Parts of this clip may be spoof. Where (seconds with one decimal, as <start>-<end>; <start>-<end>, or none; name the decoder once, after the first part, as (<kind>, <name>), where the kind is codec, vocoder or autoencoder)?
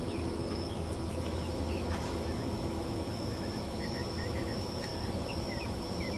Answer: 0.0-4.9 (autoencoder, DAC-VAE); 5.4-6.2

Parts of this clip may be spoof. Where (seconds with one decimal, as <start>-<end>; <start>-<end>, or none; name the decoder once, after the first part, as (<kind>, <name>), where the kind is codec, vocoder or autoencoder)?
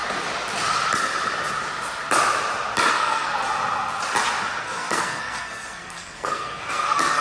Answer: 2.9-3.3 (codec, SNAC); 4.6-7.2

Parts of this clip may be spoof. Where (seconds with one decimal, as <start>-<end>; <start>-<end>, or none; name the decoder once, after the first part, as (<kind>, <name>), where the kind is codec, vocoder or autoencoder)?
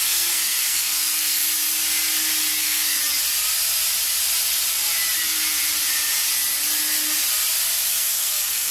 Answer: 0.0-1.4 (codec, SNAC); 2.6-3.0; 7.9-8.7